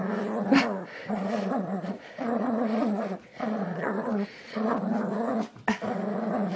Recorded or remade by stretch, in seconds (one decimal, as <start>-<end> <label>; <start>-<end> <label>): 0.0-1.0 recorded; 1.0-4.8 remade; 4.8-6.6 recorded